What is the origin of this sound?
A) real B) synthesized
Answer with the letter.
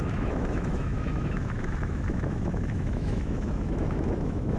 B